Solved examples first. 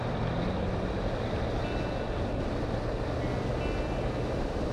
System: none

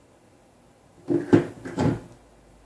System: none